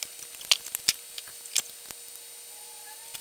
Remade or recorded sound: recorded